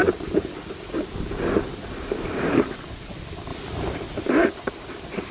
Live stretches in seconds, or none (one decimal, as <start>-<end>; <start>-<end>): 0.0-5.3